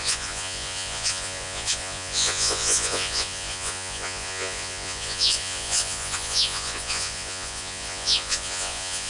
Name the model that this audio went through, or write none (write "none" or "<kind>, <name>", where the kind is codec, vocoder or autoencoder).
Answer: vocoder, Vocos